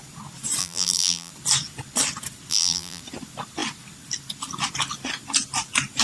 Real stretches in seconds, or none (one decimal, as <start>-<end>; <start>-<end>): 0.0-0.6; 1.3-2.5; 3.0-6.0